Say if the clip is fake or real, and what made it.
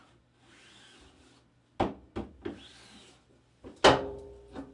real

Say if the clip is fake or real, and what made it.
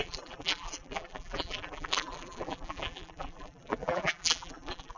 fake, vocoder, BigVGAN v2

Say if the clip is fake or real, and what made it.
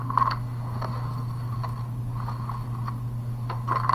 real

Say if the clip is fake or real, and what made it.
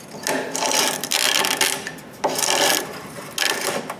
real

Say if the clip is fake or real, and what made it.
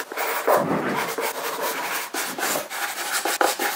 real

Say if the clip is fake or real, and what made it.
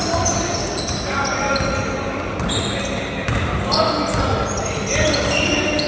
real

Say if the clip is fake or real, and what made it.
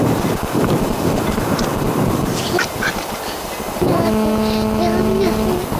real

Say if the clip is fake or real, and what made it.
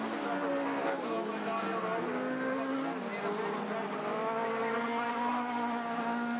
real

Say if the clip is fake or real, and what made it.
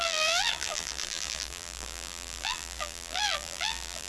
fake, vocoder, BigVGAN v2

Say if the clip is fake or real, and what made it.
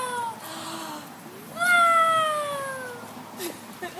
real